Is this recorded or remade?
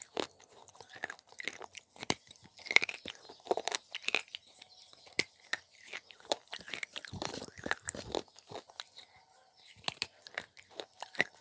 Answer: remade